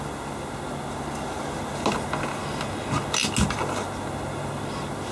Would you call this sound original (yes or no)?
yes